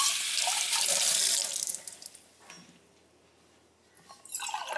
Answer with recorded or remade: recorded